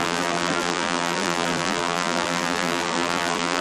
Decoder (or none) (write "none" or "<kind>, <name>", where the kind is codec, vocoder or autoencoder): vocoder, BigVGAN v2